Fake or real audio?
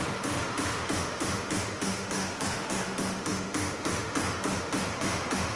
fake